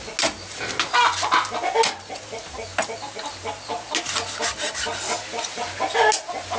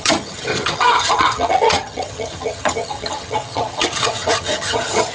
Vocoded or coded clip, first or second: second